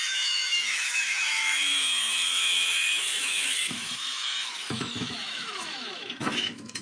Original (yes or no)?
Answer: no